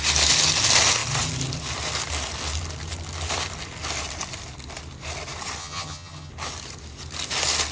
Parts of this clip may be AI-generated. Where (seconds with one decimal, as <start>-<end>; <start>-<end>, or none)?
5.6-6.3